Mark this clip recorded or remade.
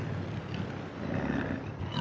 recorded